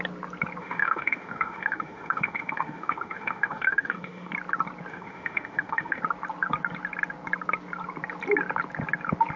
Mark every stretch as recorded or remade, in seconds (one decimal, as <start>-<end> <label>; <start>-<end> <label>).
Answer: 0.0-0.6 recorded; 0.6-4.3 remade; 4.3-4.9 recorded; 4.9-6.0 remade; 6.0-9.4 recorded